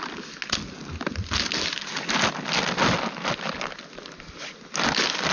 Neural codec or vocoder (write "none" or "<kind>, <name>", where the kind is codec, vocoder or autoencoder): none